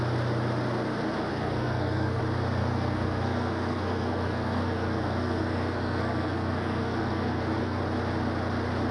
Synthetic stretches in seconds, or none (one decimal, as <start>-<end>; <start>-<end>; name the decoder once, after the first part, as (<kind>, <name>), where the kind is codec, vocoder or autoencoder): 1.3-2.2 (codec, SNAC); 2.6-7.8

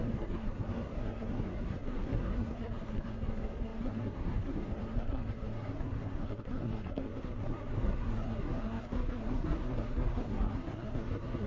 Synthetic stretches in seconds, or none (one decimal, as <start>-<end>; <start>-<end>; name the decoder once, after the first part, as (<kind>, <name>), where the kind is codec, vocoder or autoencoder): 0.0-11.5 (codec, SNAC)

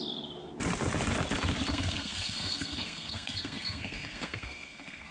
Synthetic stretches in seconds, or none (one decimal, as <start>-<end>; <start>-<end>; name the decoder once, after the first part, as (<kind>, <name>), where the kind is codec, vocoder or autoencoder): 1.7-5.1 (codec, SNAC)

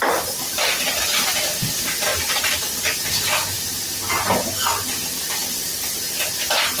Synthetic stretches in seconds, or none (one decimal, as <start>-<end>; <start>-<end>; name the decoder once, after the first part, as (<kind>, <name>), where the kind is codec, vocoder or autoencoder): none

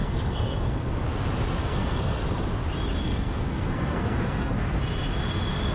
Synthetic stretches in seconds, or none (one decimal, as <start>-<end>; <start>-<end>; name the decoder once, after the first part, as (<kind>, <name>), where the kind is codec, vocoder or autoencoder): 0.0-1.0 (codec, SNAC); 1.6-2.2; 3.0-4.6